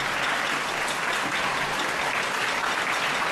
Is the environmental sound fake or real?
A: real